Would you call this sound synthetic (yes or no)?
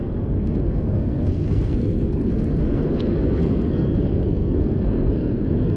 yes